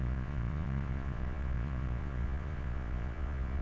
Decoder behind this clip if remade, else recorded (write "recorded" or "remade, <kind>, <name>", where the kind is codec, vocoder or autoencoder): remade, vocoder, Vocos